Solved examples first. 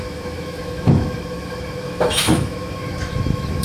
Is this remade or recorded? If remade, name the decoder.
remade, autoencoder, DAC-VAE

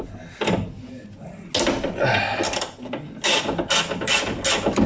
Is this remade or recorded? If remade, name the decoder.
recorded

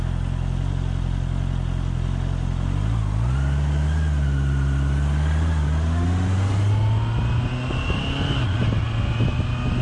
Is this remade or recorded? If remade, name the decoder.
recorded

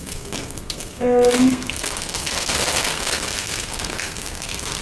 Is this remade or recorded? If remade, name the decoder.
remade, codec, SNAC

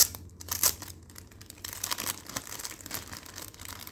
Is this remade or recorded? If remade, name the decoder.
remade, vocoder, BigVGAN v2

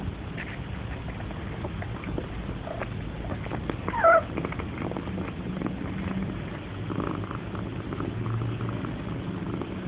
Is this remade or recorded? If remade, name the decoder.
recorded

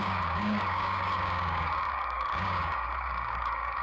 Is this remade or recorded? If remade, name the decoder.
remade, codec, DAC